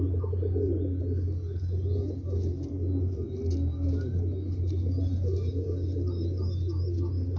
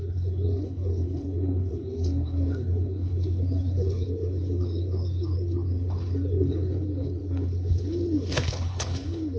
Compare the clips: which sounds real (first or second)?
first